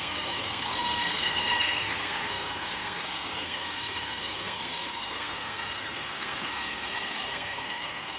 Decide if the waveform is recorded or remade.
remade